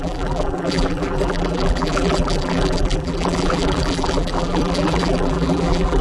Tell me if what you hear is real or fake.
fake